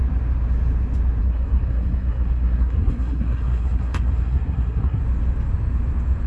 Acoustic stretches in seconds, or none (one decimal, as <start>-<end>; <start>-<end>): 0.0-1.2; 5.0-6.3